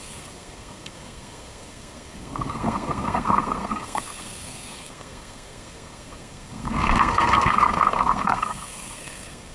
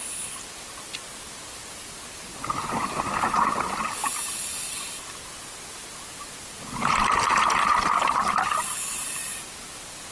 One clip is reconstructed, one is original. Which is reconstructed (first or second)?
first